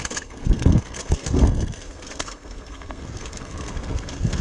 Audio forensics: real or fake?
fake